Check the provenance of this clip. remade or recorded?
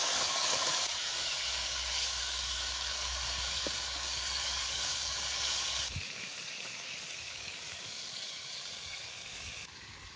remade